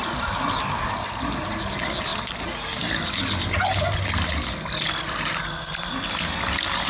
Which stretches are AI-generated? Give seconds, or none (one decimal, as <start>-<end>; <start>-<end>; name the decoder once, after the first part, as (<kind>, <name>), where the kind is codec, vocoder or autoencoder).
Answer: none